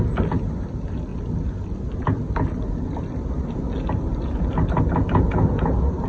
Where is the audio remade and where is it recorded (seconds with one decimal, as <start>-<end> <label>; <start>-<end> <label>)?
0.0-6.1 recorded